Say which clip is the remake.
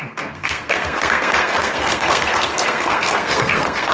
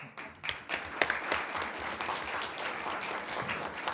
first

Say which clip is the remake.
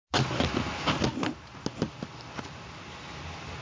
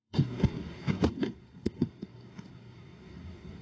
second